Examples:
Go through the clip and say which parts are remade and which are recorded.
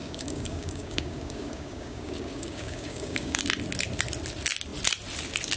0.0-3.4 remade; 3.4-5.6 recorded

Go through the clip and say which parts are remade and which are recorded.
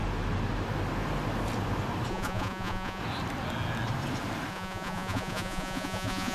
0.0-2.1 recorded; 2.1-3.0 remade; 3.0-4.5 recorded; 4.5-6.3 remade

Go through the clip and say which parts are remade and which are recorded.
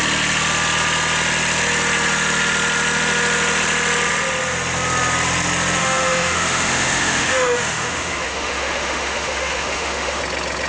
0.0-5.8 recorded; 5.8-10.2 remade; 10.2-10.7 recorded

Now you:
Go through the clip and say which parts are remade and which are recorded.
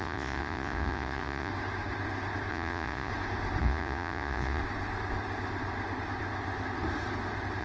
0.0-1.5 remade; 1.5-2.5 recorded; 2.5-3.1 remade; 3.1-3.6 recorded; 3.6-4.6 remade; 4.6-7.6 recorded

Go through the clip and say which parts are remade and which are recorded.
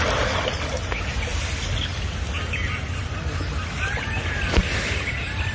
0.0-5.5 recorded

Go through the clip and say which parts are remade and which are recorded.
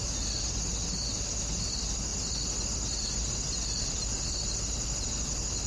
0.0-5.7 recorded